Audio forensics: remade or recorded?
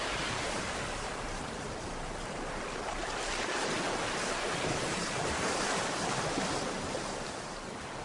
remade